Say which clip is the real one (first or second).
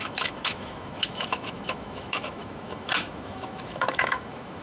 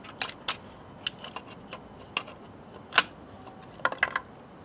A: second